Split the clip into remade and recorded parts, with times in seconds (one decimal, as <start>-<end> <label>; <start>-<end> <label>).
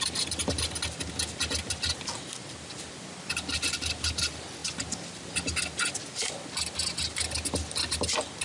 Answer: 0.0-8.4 recorded